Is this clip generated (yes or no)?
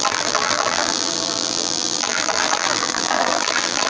yes